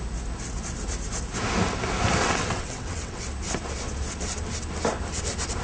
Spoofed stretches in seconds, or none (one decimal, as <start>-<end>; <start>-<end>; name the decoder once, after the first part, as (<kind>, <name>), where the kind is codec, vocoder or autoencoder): 2.2-3.2 (vocoder, WaveNeXt)